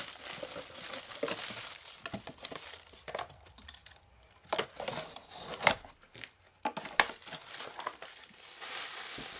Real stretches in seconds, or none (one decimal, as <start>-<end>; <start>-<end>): 0.0-9.4